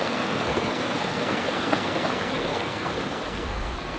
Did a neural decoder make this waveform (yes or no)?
yes